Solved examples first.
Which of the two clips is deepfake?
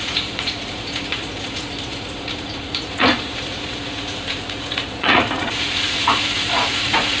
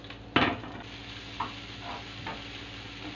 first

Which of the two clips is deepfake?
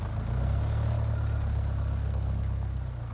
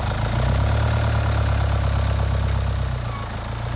first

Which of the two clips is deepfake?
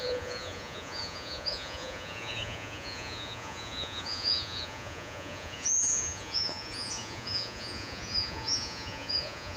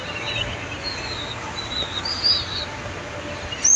first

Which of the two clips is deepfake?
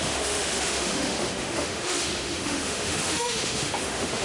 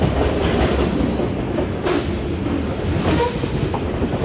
first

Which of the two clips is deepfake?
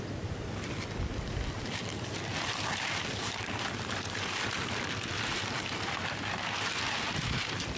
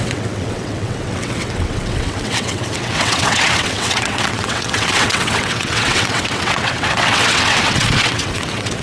second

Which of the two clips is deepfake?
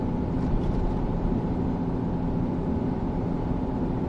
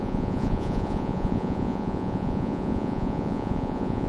second